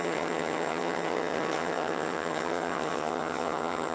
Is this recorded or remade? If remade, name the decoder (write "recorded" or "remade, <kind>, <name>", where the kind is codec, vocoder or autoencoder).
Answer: remade, vocoder, HiFi-GAN